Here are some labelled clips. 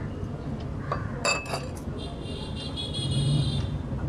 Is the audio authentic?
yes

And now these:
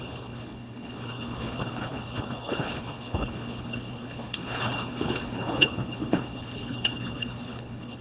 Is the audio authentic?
no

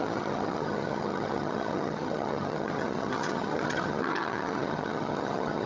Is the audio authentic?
no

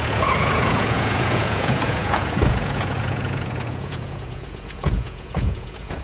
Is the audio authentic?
no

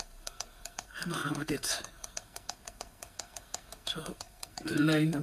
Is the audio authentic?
no